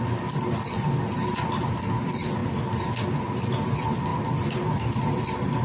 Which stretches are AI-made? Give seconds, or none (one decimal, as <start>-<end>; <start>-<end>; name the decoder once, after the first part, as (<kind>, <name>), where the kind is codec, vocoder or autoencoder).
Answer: 4.1-5.0 (vocoder, BigVGAN v2)